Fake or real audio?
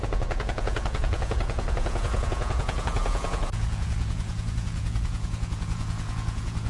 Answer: fake